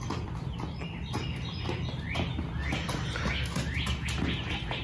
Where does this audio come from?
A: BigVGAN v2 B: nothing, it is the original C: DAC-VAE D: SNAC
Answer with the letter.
B